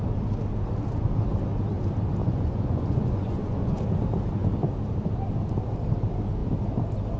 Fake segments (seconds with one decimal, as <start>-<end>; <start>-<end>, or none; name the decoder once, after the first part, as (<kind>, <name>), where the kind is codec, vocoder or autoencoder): 2.2-3.8 (vocoder, Vocos)